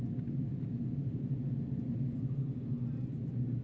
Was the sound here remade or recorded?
recorded